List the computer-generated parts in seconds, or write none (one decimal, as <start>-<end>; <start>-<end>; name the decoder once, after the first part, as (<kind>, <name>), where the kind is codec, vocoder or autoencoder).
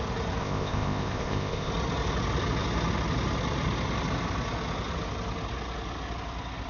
0.4-1.7 (codec, ZipCodec)